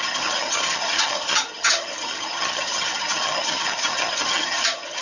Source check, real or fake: fake